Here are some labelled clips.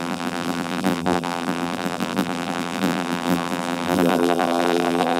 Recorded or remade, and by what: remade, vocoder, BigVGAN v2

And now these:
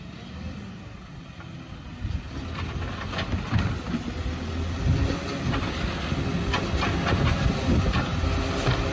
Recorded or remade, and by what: recorded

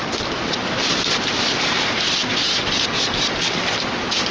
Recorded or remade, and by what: remade, vocoder, BigVGAN v2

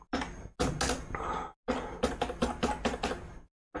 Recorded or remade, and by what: recorded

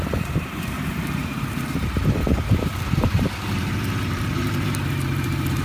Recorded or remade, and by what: remade, vocoder, BigVGAN v2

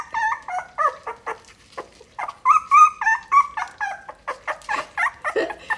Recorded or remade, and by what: recorded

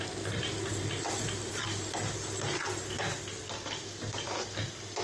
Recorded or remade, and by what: recorded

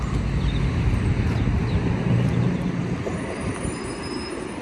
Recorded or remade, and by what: recorded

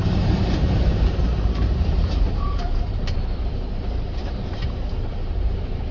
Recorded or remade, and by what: remade, vocoder, BigVGAN v2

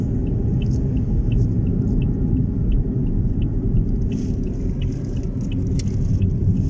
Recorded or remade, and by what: recorded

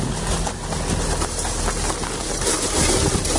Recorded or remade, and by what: recorded